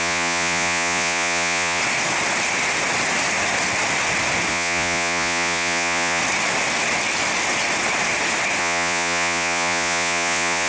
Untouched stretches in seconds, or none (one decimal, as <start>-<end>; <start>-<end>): 1.8-4.5; 6.2-8.6

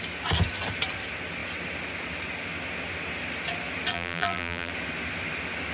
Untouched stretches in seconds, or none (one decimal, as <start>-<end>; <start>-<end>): 0.0-3.9; 4.7-5.7

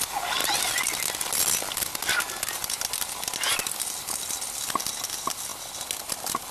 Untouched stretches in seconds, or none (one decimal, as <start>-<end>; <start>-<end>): 0.0-6.5

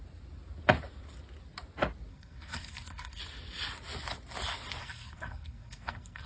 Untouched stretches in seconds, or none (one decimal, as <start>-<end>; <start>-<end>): 0.0-2.1; 3.2-4.8